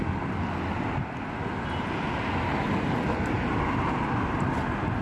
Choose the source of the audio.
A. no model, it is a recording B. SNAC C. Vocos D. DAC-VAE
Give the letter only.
A